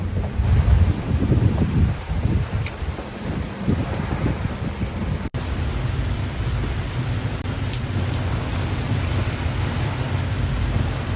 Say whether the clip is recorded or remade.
remade